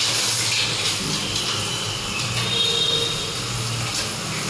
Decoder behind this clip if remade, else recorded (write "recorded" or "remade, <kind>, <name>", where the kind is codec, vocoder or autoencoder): recorded